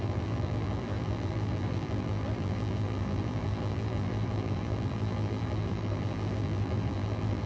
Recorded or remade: remade